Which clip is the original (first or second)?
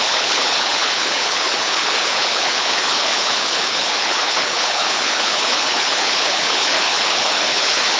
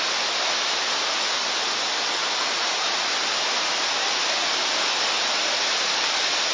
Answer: second